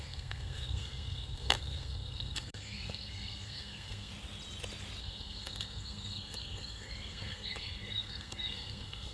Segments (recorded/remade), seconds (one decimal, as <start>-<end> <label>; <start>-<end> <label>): 0.0-4.1 remade; 4.1-5.0 recorded; 5.0-9.1 remade